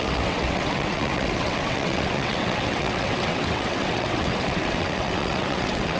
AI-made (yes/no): yes